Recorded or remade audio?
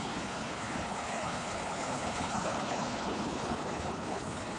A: remade